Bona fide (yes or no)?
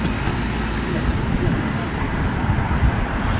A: yes